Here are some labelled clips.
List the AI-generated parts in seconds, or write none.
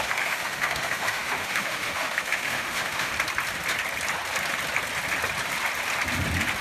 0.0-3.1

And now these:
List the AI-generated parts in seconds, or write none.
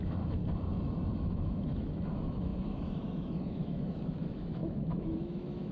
0.0-0.4; 1.2-5.7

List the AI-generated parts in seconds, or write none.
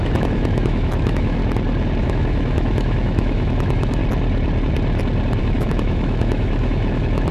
0.0-1.4; 2.0-4.0; 5.4-7.3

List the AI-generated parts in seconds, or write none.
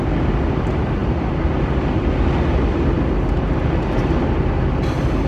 none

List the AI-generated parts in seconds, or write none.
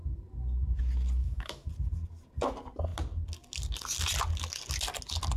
1.2-1.7